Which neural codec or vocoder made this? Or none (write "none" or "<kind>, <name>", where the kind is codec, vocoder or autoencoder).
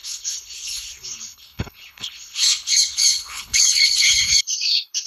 codec, HILCodec